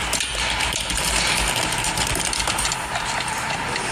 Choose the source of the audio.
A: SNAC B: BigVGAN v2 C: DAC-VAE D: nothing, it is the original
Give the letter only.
D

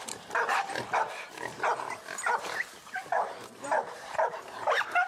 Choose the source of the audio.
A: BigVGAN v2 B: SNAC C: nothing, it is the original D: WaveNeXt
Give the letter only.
A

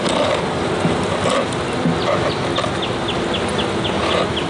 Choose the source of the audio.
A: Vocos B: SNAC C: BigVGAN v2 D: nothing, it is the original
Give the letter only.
D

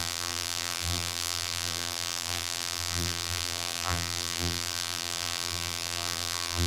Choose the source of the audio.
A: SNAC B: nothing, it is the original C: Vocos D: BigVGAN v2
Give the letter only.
D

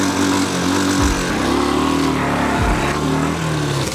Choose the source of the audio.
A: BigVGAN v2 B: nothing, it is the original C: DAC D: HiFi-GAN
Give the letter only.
B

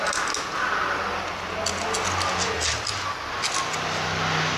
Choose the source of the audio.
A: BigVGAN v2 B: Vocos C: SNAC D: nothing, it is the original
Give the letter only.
D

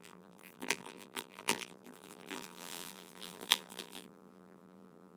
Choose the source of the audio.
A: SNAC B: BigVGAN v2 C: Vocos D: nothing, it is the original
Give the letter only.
B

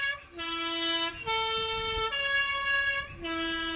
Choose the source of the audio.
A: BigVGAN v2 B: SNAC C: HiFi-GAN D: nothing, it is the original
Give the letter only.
D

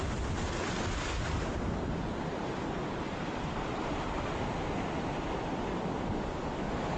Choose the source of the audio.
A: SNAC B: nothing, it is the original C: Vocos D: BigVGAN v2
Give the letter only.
B